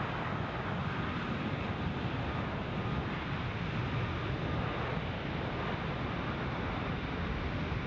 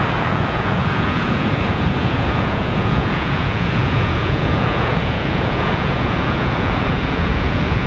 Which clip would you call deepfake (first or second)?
second